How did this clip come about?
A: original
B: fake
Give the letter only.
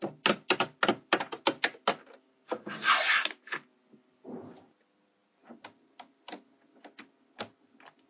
A